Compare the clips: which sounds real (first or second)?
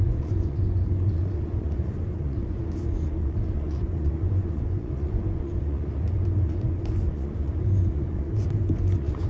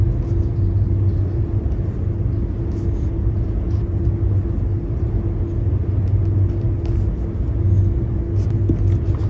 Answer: second